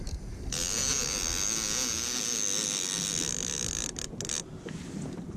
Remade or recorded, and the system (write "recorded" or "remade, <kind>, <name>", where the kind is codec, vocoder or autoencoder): recorded